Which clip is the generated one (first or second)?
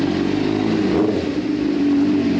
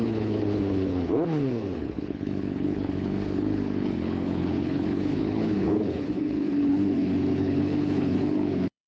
second